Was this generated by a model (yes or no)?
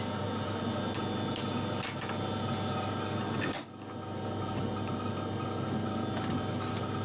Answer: no